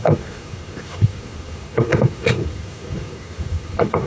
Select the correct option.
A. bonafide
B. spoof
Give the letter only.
B